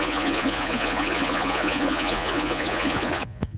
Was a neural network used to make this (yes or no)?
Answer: yes